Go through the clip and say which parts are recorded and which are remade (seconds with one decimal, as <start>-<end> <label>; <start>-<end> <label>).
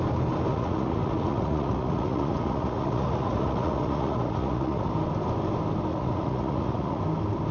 0.0-0.5 recorded; 0.5-4.9 remade; 4.9-5.9 recorded; 5.9-7.0 remade; 7.0-7.5 recorded